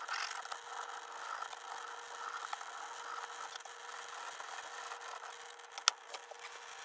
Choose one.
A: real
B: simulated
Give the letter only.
A